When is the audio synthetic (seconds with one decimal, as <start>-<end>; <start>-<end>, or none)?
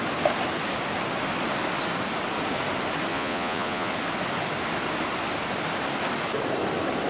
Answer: 3.1-3.9